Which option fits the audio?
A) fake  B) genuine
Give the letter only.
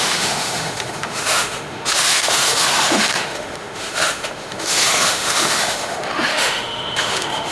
A